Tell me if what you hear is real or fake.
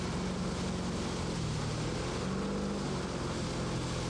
real